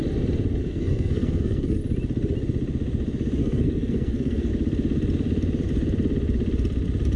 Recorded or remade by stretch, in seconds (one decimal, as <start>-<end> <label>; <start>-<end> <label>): 0.0-0.6 recorded; 0.6-1.8 remade; 1.8-3.4 recorded; 3.4-4.5 remade; 4.5-7.2 recorded